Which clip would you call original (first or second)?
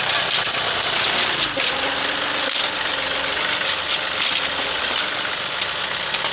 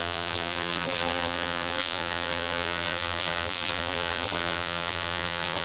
first